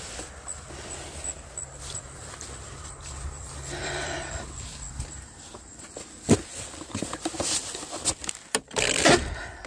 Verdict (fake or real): real